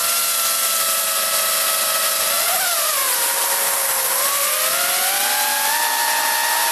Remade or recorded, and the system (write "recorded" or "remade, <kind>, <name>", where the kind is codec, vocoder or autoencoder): recorded